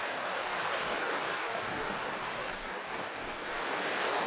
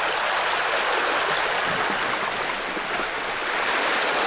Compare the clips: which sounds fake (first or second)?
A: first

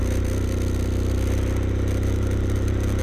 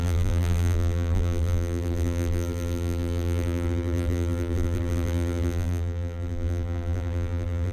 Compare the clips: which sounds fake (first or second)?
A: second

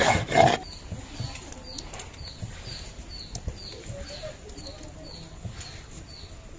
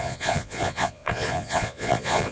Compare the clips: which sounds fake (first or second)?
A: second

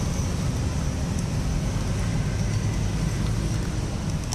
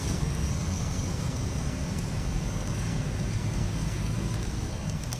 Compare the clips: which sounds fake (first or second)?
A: second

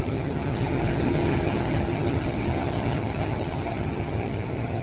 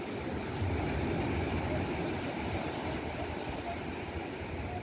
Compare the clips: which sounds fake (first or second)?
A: first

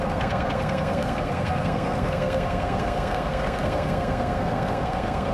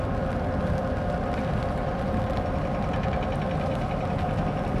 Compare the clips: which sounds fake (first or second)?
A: first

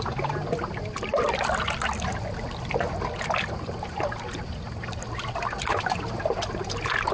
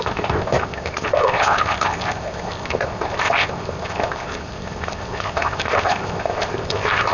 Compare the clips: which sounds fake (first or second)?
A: second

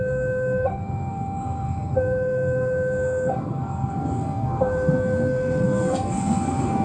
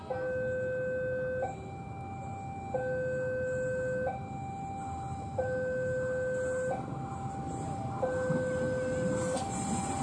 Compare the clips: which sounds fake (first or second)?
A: first